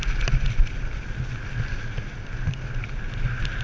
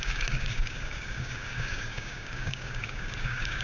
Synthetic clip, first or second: second